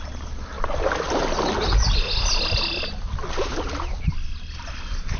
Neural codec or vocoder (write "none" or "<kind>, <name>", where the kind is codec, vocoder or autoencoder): none